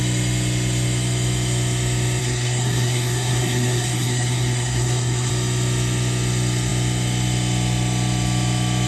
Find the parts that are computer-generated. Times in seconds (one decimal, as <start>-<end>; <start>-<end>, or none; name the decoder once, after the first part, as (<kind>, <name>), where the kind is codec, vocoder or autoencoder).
2.2-5.3 (codec, SNAC)